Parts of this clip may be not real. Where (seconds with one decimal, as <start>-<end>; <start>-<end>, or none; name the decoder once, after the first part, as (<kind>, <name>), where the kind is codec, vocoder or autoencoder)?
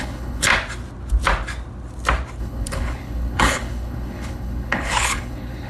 0.0-0.5 (codec, HILCodec); 2.4-5.7